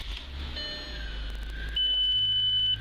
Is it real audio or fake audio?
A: real